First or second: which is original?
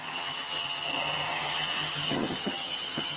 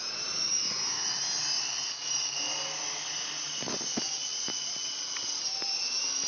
second